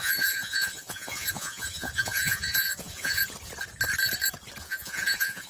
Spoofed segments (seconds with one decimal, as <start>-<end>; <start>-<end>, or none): 0.0-3.2; 4.6-5.5